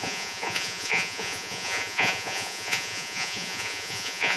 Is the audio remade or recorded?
remade